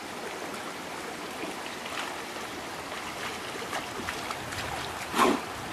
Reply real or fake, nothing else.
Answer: real